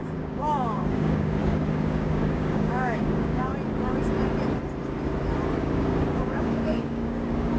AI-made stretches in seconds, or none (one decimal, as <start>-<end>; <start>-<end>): 0.0-3.5; 5.6-7.6